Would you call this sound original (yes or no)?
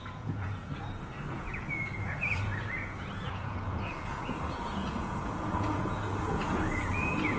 no